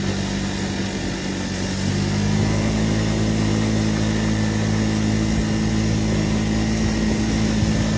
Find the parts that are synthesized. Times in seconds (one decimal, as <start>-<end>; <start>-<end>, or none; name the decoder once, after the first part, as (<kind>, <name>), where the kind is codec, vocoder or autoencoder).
none